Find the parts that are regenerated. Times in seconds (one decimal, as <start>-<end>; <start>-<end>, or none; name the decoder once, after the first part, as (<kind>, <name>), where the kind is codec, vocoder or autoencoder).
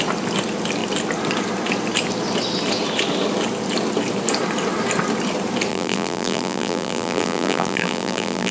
5.7-8.5 (vocoder, BigVGAN v2)